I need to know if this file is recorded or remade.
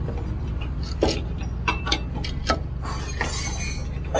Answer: recorded